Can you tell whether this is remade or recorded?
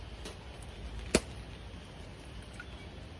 recorded